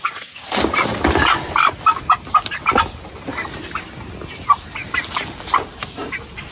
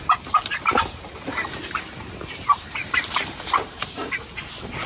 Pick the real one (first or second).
first